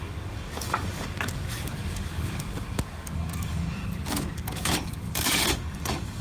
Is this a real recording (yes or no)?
no